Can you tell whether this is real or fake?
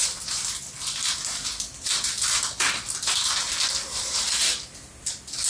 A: real